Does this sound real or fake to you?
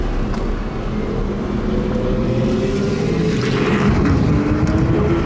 real